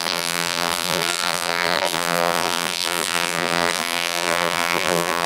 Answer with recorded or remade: remade